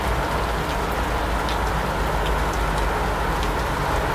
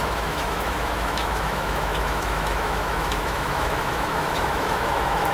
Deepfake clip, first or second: second